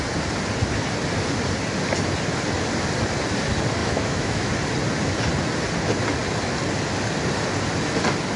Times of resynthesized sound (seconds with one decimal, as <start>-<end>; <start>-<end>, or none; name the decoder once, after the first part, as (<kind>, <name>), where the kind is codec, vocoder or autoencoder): 3.8-4.5 (autoencoder, DAC-VAE)